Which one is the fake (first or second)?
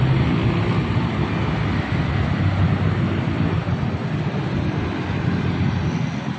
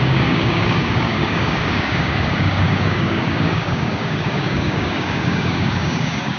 second